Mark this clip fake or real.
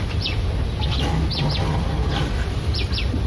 fake